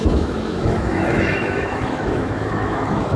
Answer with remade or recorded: remade